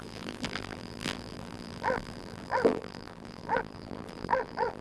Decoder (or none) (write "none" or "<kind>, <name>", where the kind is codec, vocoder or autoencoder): vocoder, BigVGAN v2